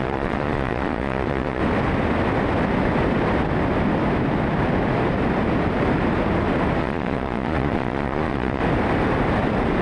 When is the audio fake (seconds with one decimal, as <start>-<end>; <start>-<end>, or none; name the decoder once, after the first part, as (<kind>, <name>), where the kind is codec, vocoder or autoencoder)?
0.0-1.6 (vocoder, Vocos); 6.8-8.6